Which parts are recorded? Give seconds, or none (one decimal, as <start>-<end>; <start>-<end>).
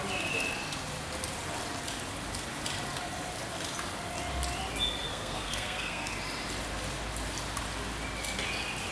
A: 0.0-5.1; 6.1-8.9